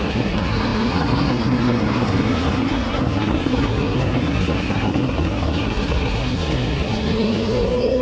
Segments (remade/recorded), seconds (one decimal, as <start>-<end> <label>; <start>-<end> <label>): 0.0-8.0 remade